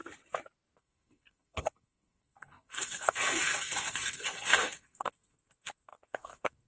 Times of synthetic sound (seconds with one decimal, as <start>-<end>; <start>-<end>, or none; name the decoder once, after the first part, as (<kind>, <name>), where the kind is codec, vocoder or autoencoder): 0.8-6.7 (codec, SNAC)